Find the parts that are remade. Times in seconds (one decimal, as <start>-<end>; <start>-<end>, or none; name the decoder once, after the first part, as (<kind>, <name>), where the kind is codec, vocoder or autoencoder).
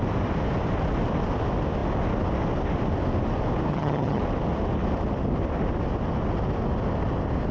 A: 3.7-4.2 (vocoder, HiFi-GAN)